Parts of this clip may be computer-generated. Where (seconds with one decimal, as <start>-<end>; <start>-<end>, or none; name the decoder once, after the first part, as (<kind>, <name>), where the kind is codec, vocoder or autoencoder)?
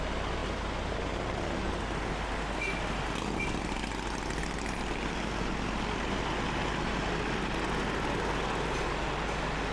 none